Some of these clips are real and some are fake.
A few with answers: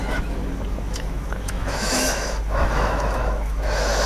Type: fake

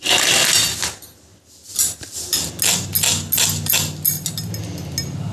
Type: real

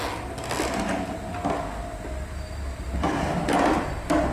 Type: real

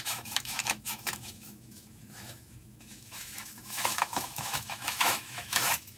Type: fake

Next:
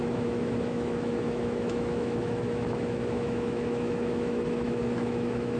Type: fake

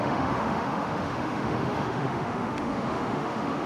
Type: fake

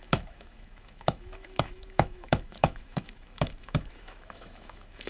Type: fake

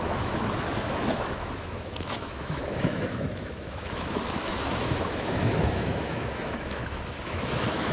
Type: fake